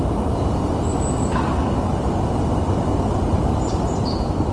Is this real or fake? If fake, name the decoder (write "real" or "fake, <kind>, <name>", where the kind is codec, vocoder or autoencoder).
real